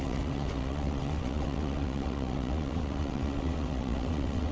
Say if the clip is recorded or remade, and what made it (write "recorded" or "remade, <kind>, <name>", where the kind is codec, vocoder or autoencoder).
remade, vocoder, WaveNeXt